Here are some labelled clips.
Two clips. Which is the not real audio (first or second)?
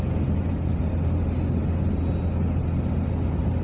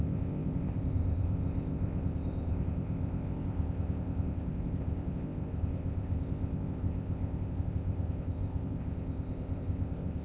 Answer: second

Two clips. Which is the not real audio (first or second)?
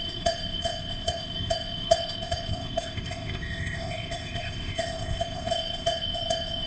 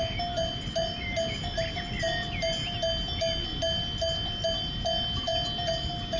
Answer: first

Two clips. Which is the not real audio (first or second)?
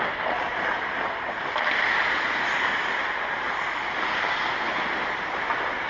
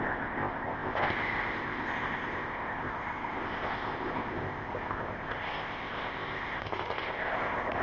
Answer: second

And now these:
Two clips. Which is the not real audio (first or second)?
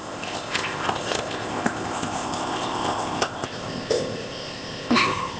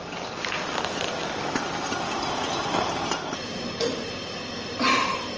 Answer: first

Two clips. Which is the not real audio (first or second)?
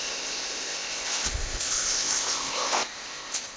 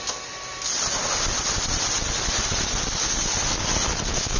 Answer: first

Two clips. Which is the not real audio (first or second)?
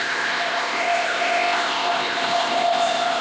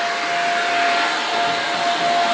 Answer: first